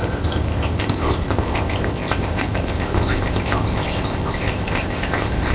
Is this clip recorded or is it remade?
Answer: remade